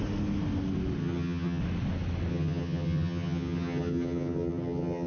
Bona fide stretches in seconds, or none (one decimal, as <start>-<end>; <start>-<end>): 0.0-1.0; 1.6-2.3